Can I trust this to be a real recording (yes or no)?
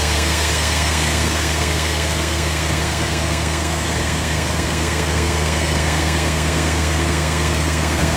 no